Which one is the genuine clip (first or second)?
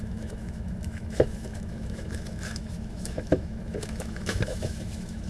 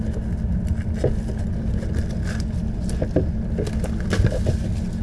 second